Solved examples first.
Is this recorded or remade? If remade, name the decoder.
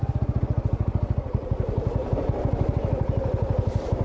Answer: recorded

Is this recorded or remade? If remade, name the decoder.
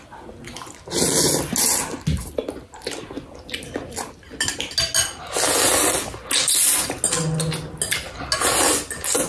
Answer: recorded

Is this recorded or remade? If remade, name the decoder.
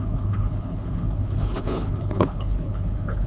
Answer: remade, codec, HILCodec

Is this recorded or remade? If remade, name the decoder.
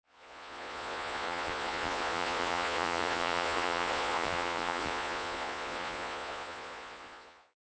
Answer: remade, vocoder, Vocos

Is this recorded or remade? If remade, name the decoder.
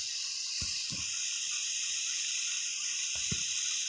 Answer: remade, vocoder, BigVGAN v2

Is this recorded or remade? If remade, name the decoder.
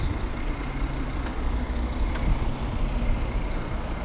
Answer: recorded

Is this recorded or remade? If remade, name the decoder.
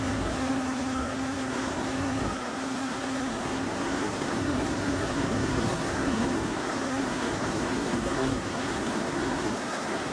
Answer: remade, codec, SNAC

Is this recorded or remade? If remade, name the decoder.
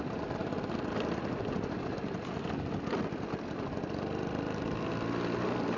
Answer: recorded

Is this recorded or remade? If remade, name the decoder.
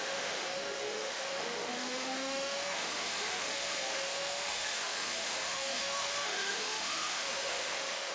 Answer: remade, autoencoder, DAC-VAE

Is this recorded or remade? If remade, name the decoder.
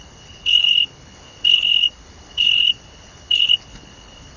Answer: remade, codec, HILCodec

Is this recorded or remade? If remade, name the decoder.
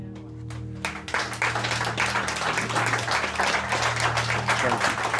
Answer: recorded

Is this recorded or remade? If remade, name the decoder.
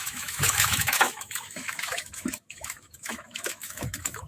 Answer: remade, autoencoder, DAC-VAE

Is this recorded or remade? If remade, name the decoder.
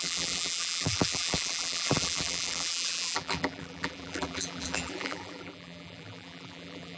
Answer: remade, vocoder, BigVGAN v2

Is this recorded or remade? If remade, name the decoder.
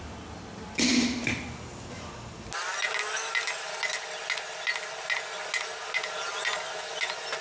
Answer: recorded